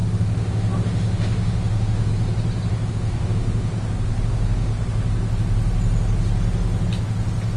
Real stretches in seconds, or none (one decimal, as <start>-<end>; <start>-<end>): 2.1-2.9; 3.7-4.3; 4.7-7.6